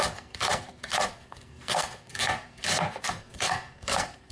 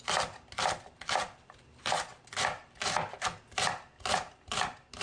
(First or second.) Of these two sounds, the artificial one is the first